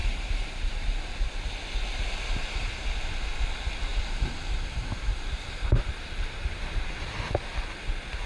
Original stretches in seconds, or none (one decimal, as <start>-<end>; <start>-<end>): 1.5-3.9; 7.3-8.3